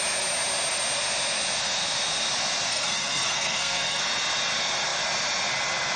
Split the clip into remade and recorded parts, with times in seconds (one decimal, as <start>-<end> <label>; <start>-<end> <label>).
0.0-2.7 recorded; 2.7-4.0 remade; 4.0-6.0 recorded